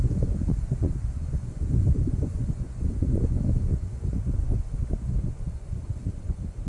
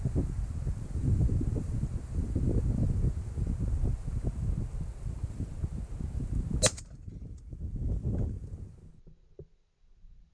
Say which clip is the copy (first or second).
first